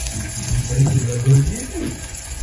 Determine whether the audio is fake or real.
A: fake